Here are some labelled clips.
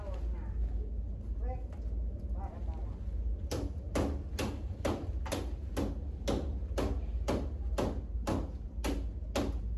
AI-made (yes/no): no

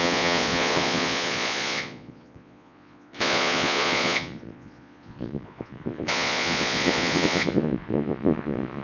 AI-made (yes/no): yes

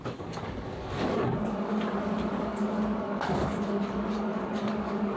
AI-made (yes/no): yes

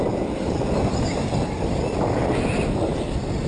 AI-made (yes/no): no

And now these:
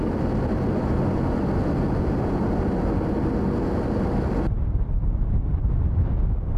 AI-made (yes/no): no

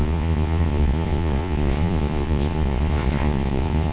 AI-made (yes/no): yes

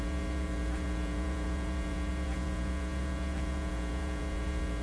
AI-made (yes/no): yes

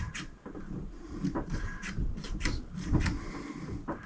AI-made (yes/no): yes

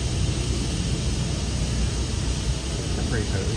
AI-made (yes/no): no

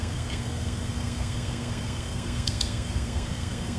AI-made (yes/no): yes